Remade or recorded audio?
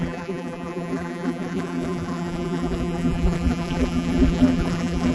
remade